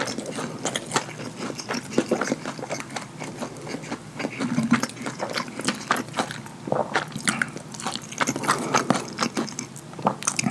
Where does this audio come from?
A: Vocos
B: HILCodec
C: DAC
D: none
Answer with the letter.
D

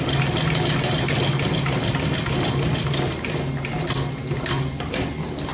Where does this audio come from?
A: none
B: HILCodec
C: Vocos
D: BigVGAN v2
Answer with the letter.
A